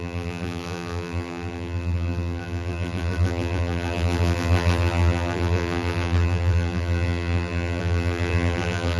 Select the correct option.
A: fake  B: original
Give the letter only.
A